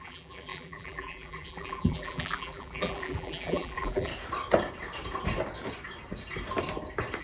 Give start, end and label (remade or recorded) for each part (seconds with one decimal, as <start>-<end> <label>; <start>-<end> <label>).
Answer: 0.0-4.1 remade; 4.1-7.2 recorded